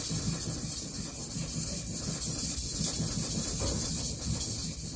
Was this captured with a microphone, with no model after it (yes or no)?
yes